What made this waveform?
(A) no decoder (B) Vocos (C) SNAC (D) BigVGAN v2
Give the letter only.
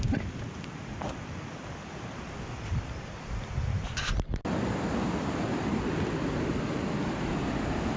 A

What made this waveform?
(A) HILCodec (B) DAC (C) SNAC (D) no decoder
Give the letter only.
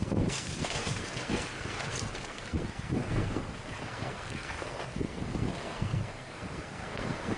C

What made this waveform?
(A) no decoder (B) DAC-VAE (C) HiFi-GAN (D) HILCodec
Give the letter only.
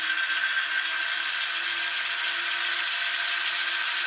A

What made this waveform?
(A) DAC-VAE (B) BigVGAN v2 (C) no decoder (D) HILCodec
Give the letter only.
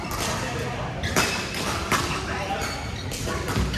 C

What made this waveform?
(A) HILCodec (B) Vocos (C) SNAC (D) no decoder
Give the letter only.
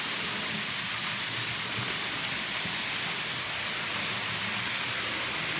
D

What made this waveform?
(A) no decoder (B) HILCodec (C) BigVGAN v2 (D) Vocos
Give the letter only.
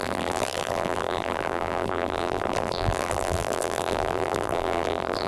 C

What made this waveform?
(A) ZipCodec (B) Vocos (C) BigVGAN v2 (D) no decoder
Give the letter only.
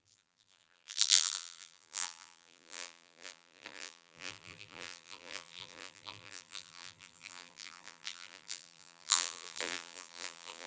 C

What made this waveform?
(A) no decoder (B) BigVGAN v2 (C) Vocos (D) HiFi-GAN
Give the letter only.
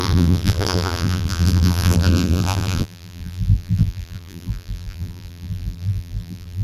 B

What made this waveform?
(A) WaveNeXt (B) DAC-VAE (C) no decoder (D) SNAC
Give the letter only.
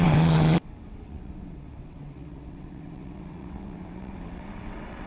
A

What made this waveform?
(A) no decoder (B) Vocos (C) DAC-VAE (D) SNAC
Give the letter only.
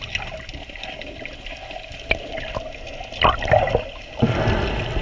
A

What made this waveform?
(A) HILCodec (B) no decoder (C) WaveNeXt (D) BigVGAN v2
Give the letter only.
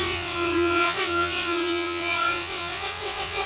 C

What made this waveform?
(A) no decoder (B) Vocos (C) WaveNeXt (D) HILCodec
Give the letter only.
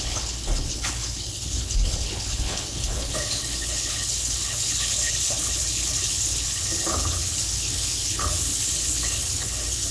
D